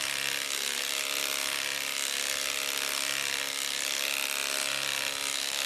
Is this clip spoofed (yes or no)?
no